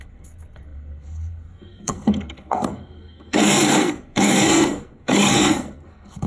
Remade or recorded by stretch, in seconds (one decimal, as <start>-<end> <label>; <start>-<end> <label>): 0.0-6.3 remade